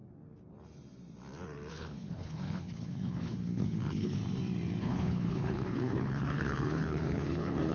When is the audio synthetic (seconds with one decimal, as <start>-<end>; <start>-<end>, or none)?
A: 1.7-4.2; 4.8-7.7